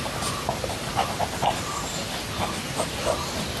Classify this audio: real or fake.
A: real